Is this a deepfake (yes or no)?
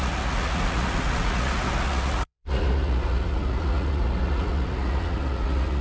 yes